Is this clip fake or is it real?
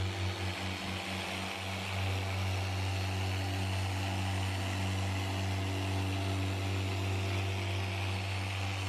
real